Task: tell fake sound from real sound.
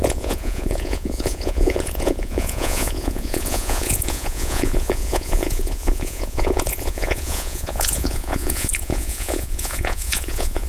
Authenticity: fake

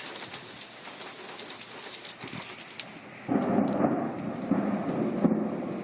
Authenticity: real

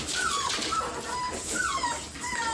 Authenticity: real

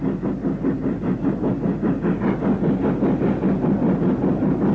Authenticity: real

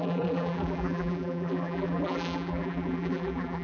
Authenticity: fake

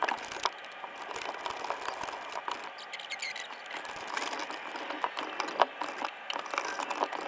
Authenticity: real